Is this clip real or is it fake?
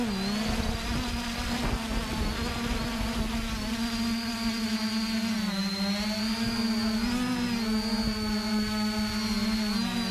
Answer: real